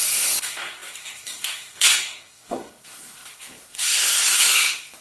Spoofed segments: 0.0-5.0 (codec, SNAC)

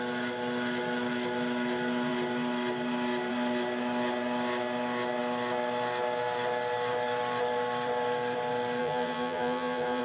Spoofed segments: 8.8-10.0 (vocoder, BigVGAN v2)

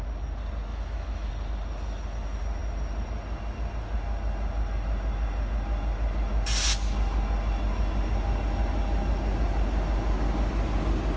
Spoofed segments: 0.7-1.3 (autoencoder, DAC-VAE)

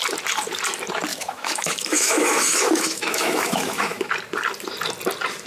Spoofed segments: 1.1-4.1 (autoencoder, DAC-VAE)

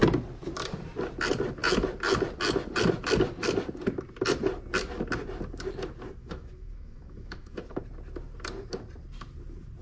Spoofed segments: 6.2-7.8 (autoencoder, DAC-VAE)

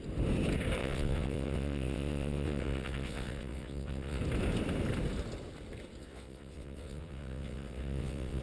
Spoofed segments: 0.8-4.2 (vocoder, WaveNeXt); 6.0-8.4

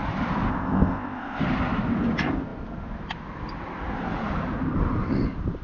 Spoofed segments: 0.5-1.4 (codec, ZipCodec)